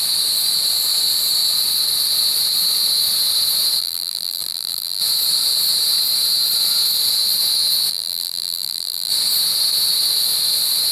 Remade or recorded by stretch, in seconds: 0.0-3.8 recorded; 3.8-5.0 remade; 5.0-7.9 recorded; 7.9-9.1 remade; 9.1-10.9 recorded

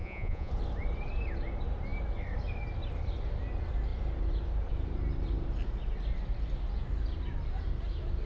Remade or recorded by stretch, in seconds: 0.0-0.5 remade; 0.5-8.3 recorded

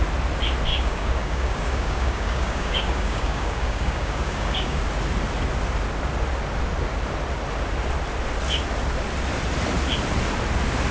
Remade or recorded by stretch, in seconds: 0.0-0.7 recorded; 0.7-4.8 remade; 4.8-10.9 recorded

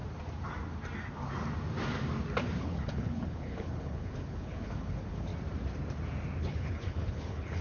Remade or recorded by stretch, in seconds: 0.0-2.6 recorded; 2.6-5.3 remade; 5.3-6.4 recorded; 6.4-7.6 remade

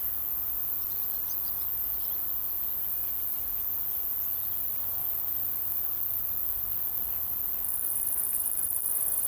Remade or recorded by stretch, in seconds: 0.0-5.0 recorded; 5.0-8.9 remade; 8.9-9.3 recorded

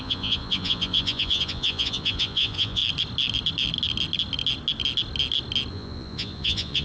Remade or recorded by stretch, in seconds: 0.0-2.8 remade; 2.8-5.7 recorded; 5.7-6.8 remade